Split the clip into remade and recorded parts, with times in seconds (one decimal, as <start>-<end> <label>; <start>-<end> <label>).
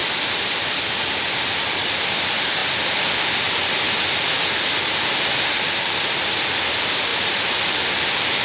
0.0-1.2 recorded; 1.2-2.6 remade; 2.6-5.6 recorded; 5.6-8.4 remade